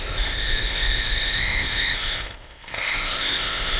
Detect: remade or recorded remade